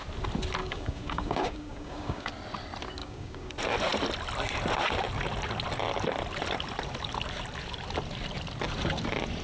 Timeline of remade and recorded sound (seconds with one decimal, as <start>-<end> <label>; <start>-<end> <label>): 0.0-0.6 recorded; 0.6-2.3 remade; 2.3-3.0 recorded; 3.0-3.5 remade; 3.5-9.4 recorded